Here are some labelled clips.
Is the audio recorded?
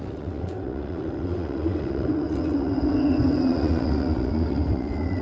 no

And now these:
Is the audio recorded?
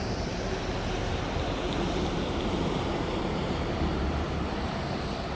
no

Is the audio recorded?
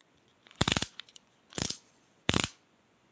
no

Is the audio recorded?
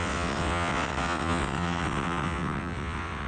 no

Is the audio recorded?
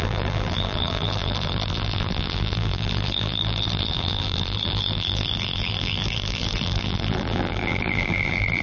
no